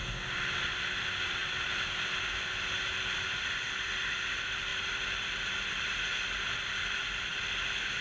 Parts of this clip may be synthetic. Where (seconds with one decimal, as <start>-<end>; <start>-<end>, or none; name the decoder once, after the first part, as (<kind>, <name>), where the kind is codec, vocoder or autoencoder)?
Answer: none